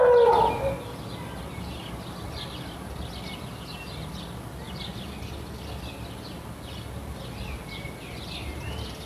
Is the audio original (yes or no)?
yes